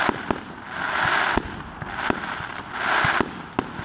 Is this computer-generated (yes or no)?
no